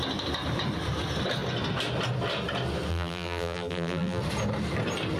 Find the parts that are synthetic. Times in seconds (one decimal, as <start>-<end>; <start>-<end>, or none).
2.9-4.2